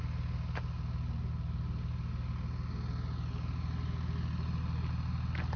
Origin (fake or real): real